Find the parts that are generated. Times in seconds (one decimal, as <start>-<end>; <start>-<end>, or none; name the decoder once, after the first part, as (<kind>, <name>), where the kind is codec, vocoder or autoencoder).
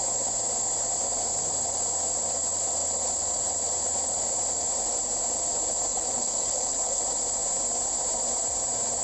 5.9-7.0 (codec, HILCodec)